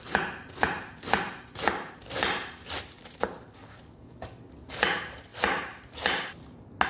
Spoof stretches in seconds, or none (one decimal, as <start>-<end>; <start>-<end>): 3.6-4.5